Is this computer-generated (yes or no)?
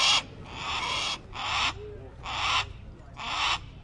no